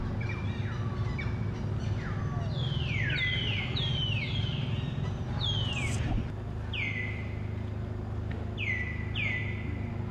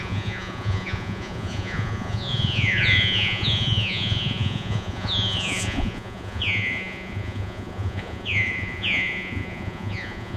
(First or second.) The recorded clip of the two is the first